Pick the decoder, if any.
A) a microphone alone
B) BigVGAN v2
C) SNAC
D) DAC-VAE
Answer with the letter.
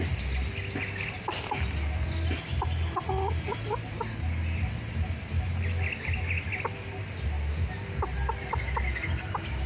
A